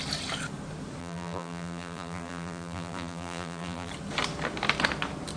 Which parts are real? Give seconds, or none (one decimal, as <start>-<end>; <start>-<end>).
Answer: 0.0-1.0; 3.9-5.4